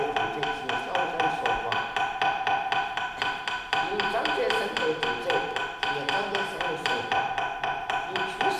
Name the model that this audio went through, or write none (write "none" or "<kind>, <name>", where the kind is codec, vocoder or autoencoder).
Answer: none